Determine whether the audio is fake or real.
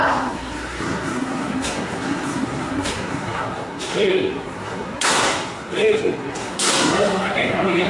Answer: fake